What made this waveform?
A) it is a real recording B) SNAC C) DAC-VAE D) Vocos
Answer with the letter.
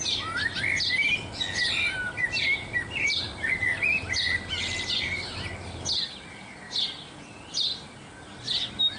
A